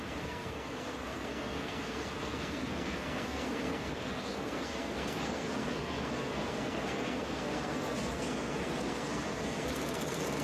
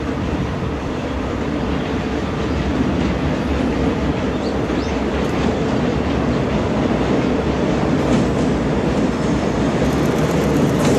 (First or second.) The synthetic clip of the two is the first